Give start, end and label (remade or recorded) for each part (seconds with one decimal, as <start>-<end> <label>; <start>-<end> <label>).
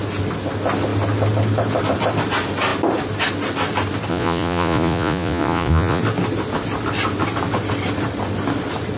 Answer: 0.0-4.1 recorded; 4.1-6.0 remade; 6.0-9.0 recorded